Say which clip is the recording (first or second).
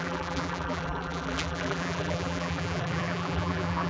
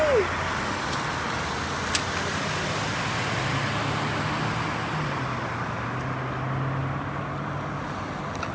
second